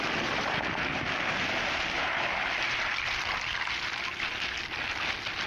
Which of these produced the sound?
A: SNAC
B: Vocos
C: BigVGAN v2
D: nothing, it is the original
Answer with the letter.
D